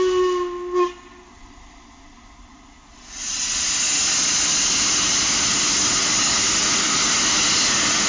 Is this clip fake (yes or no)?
no